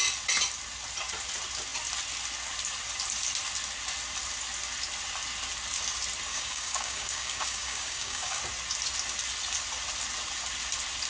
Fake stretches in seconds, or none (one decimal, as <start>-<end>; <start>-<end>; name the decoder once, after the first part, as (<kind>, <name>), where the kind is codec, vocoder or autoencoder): 6.3-8.4 (codec, DAC)